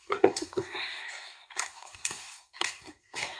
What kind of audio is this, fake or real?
fake